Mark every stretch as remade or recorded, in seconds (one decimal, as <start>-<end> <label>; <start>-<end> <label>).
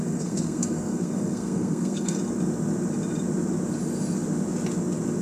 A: 0.0-2.2 remade; 2.2-5.2 recorded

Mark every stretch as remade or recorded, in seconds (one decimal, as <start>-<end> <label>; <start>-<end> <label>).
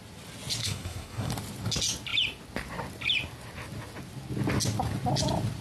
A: 0.0-0.6 recorded; 0.6-1.3 remade; 1.3-5.6 recorded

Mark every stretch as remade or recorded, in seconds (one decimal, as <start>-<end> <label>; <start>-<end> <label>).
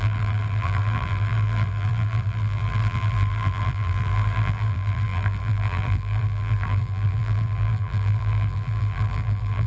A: 0.0-9.7 remade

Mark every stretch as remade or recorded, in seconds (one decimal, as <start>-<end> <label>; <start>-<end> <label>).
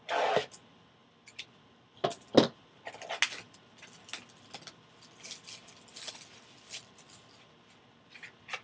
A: 0.0-8.6 recorded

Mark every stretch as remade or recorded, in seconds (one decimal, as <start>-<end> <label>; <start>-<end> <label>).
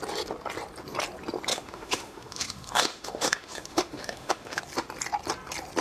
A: 0.0-1.5 recorded; 1.5-4.6 remade; 4.6-5.8 recorded